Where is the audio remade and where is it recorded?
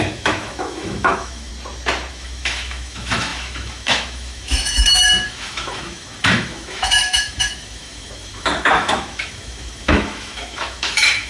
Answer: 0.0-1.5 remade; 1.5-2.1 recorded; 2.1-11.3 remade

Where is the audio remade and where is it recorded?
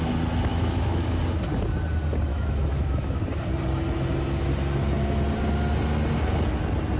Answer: 0.0-0.5 recorded; 0.5-1.2 remade; 1.2-2.3 recorded; 2.3-3.2 remade; 3.2-7.0 recorded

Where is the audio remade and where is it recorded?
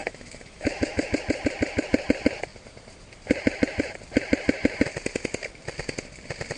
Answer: 0.0-1.1 remade; 1.1-6.6 recorded